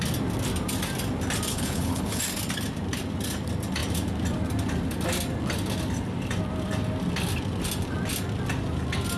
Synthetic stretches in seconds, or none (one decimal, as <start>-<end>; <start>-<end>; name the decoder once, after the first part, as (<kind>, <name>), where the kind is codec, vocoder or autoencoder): 1.5-2.2 (codec, HILCodec)